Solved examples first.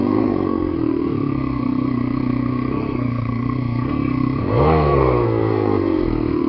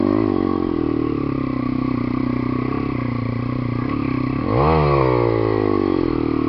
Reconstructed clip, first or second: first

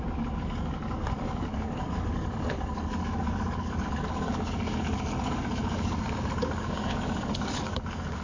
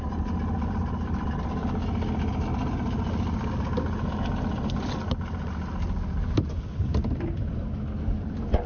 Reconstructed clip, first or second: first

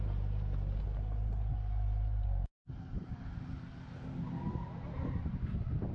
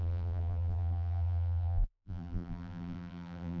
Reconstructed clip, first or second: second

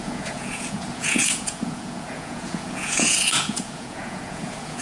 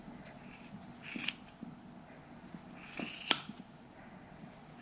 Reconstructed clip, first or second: first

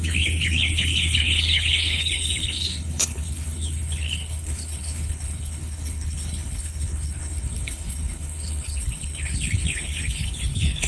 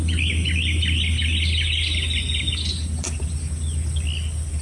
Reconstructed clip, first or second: first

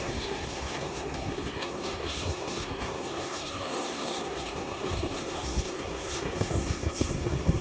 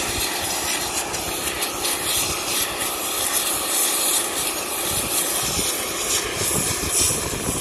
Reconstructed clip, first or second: first